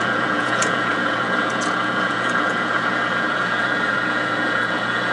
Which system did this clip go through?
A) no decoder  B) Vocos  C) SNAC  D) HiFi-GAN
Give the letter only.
B